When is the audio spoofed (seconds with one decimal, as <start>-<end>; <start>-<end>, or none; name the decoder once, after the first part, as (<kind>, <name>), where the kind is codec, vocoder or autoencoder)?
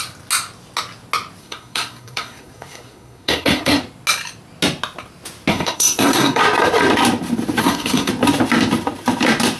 1.4-3.8 (codec, SNAC); 5.5-6.4; 7.6-8.1